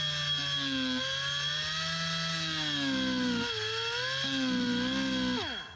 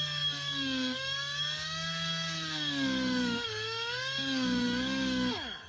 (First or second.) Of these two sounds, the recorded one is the first